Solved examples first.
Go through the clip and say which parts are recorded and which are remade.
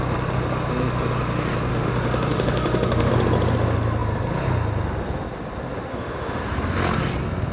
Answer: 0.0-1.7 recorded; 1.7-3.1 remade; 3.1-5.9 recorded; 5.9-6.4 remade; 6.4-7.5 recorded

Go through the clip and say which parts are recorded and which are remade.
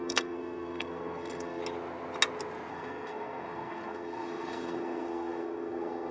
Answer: 0.0-1.6 remade; 1.6-2.7 recorded; 2.7-6.1 remade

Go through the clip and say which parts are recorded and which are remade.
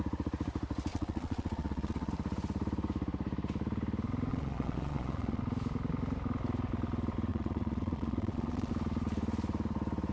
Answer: 0.0-0.9 recorded; 0.9-2.1 remade; 2.1-4.3 recorded; 4.3-5.4 remade; 5.4-7.3 recorded; 7.3-8.7 remade; 8.7-10.1 recorded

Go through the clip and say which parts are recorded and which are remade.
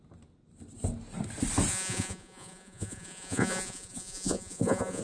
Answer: 0.0-1.7 recorded; 1.7-5.0 remade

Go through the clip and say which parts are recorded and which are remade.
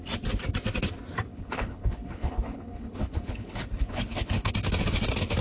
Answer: 0.0-1.3 recorded; 1.3-4.5 remade; 4.5-5.4 recorded